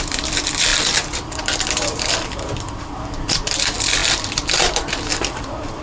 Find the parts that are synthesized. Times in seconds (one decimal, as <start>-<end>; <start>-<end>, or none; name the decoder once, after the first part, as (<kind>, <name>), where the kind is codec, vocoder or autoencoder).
0.0-5.8 (vocoder, BigVGAN v2)